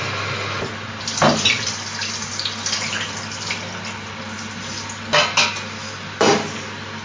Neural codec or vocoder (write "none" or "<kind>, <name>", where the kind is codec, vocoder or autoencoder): none